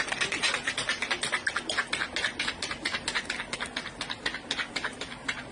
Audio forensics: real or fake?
real